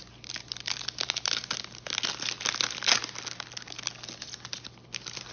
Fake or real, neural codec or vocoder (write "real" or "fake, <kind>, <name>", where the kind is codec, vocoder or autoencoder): real